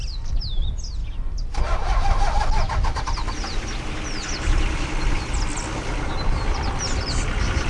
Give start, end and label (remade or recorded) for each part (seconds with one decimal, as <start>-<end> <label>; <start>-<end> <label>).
0.0-7.7 recorded